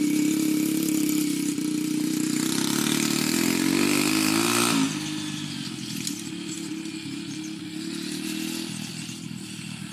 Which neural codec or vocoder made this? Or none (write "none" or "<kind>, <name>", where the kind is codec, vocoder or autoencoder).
none